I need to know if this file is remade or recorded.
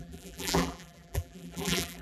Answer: remade